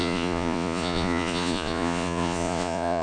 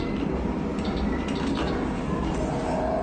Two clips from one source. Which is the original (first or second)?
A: second